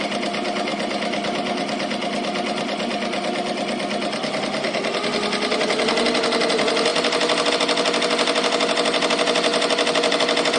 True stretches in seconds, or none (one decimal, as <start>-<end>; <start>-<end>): 0.0-10.6